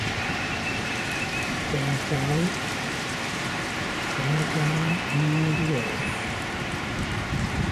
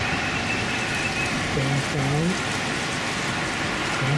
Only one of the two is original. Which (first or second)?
second